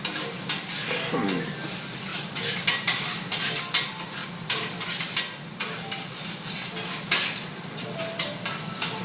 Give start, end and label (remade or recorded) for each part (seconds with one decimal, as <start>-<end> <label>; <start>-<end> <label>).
0.0-9.0 recorded